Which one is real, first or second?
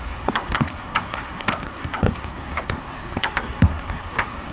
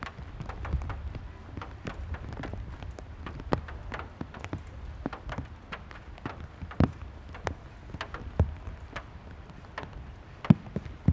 second